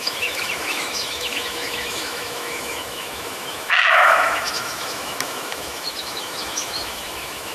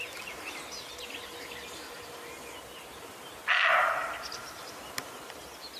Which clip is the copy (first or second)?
first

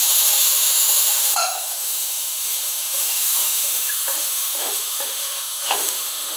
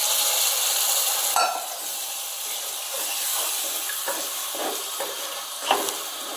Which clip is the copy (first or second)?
first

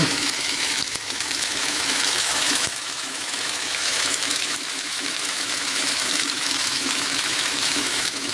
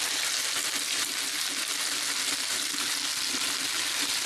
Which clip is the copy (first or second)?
first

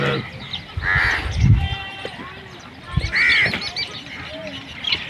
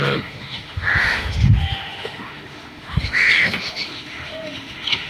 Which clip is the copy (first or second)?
second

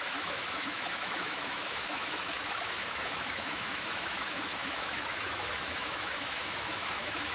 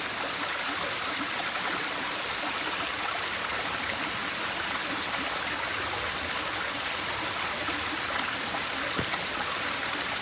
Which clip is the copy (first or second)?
first